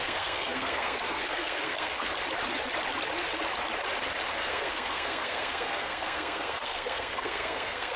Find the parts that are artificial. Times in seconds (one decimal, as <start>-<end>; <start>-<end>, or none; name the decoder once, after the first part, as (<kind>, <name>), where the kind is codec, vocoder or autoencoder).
0.0-2.1 (codec, SNAC); 4.4-8.0